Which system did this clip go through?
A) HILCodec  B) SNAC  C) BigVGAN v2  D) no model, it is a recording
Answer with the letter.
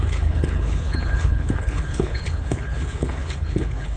A